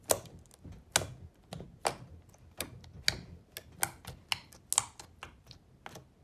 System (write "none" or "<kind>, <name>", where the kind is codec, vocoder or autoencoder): none